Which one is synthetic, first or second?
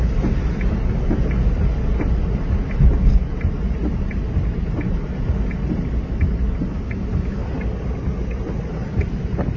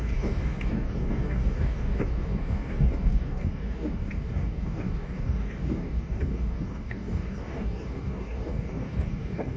second